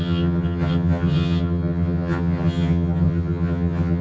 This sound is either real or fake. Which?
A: fake